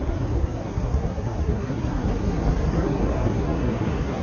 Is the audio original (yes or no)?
no